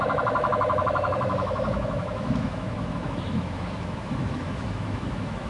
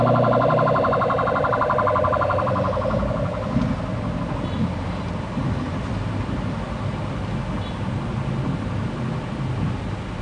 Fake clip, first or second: first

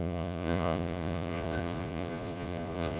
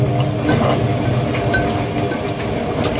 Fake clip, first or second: first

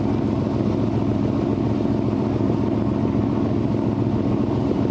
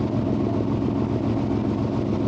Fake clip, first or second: first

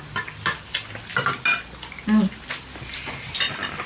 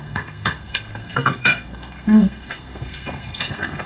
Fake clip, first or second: second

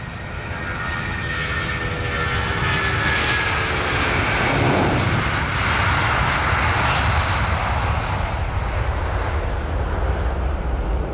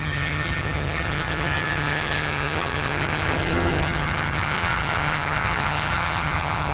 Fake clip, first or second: second